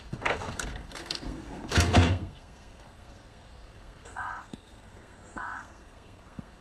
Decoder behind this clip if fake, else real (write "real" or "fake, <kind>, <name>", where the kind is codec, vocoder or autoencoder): fake, codec, SNAC